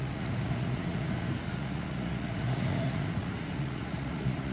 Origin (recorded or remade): remade